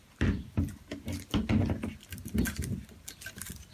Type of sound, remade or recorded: recorded